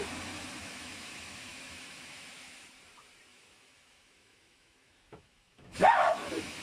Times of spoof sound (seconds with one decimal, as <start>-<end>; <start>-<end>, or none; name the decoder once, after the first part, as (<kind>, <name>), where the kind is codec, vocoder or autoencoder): 0.6-2.7 (autoencoder, DAC-VAE); 3.3-6.6